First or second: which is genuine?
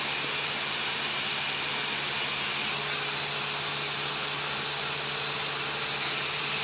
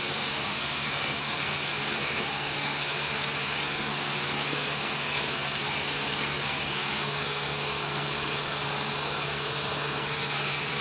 first